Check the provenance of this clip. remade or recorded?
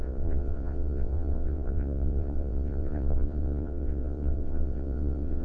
remade